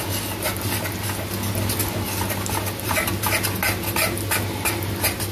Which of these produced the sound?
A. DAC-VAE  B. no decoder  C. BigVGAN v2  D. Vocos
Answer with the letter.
B